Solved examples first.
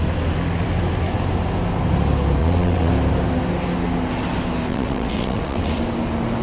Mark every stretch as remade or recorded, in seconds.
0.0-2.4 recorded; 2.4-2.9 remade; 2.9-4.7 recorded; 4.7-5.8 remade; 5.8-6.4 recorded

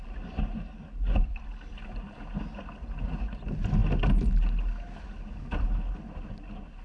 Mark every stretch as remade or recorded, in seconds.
0.0-6.8 recorded

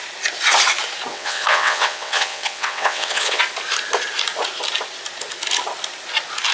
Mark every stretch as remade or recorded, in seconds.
0.0-1.1 recorded; 1.1-3.4 remade; 3.4-6.5 recorded